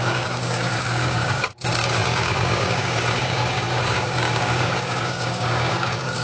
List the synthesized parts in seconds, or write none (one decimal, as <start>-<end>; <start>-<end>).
0.0-6.2